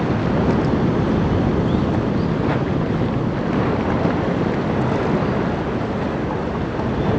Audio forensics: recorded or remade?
recorded